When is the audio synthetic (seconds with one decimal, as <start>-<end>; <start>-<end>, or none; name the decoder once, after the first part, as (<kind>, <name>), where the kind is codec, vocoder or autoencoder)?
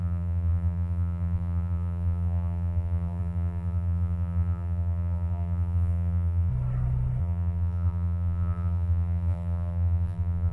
0.0-6.5 (vocoder, BigVGAN v2); 7.2-10.5